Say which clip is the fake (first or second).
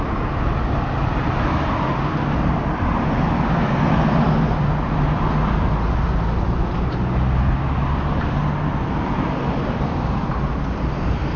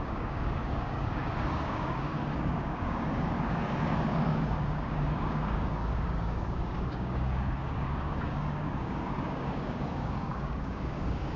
second